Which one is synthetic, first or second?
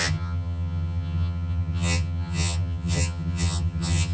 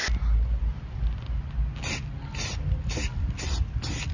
first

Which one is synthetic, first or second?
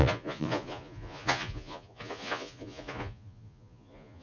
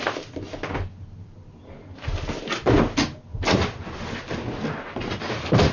first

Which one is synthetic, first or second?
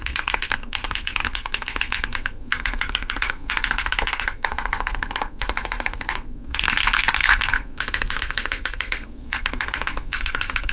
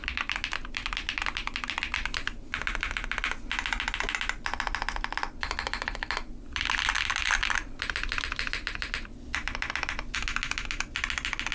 first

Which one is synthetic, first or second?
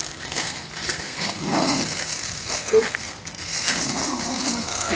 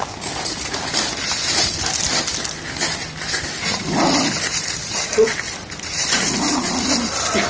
first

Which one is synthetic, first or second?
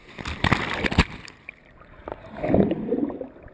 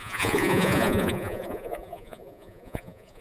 second